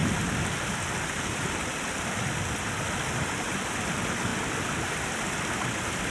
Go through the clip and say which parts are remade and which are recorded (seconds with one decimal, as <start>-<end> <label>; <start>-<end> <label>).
0.0-6.1 recorded